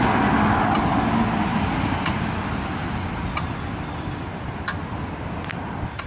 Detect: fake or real real